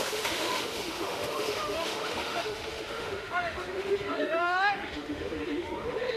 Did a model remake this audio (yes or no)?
yes